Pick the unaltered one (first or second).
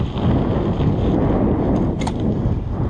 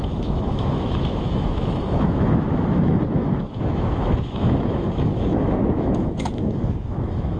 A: first